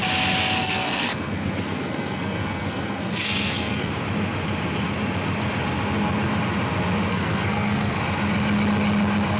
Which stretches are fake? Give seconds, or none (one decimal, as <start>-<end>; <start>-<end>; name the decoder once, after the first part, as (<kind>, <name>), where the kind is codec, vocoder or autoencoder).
0.6-3.9 (codec, SNAC); 7.1-8.0